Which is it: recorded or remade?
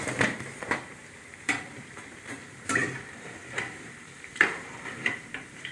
remade